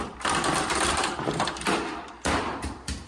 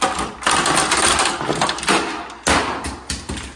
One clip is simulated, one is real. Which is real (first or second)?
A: second